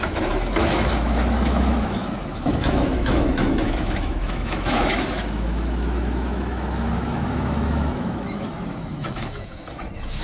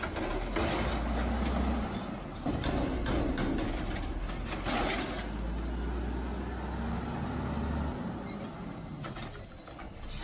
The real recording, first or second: second